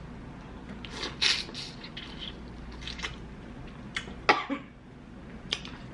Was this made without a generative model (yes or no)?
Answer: yes